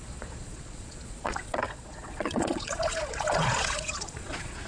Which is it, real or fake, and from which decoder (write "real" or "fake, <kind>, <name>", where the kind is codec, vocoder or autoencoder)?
fake, vocoder, Vocos